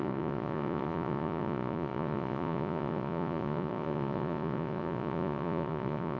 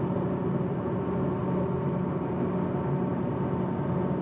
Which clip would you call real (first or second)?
second